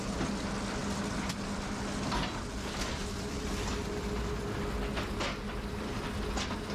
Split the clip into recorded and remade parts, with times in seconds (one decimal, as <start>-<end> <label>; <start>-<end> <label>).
0.0-3.0 recorded; 3.0-3.7 remade; 3.7-6.7 recorded